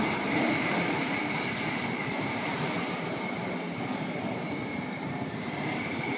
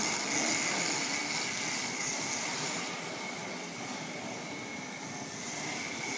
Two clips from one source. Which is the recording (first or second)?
second